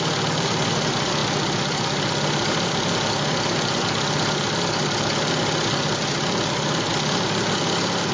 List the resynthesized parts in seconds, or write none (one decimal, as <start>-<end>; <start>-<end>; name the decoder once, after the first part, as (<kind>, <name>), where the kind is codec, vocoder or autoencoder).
none